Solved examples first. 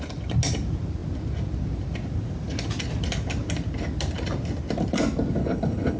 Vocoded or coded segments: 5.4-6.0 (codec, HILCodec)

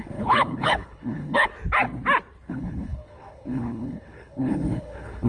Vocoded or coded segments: 0.0-1.5 (codec, HILCodec); 2.5-5.3

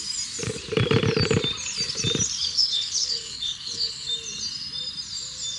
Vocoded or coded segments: 2.4-4.1 (codec, HILCodec)

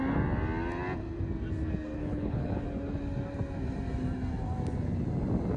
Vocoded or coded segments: 2.0-2.6 (codec, HILCodec)